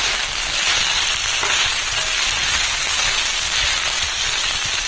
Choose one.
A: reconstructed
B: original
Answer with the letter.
B